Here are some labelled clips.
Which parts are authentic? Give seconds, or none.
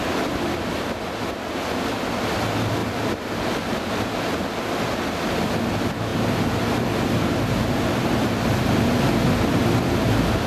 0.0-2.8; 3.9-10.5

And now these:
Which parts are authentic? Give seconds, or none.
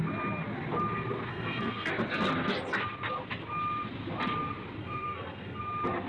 0.0-1.3; 1.9-4.8; 5.6-6.1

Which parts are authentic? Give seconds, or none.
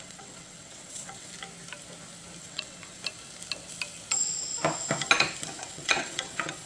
1.3-2.4; 3.0-5.6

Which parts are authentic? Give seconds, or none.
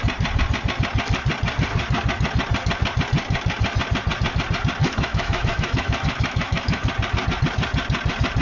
0.0-4.8; 6.9-8.4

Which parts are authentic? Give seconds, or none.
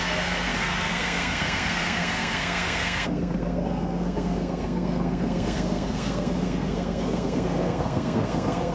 none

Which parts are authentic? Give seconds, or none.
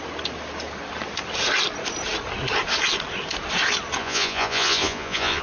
0.0-4.0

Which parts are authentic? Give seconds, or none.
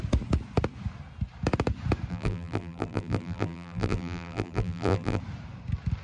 0.0-2.1; 5.2-6.0